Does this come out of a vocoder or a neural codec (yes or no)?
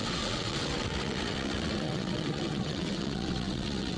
yes